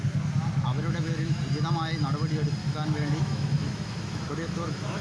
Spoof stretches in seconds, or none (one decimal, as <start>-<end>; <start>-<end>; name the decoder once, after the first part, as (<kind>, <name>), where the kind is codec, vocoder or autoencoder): 0.7-1.4 (autoencoder, DAC-VAE); 2.6-5.0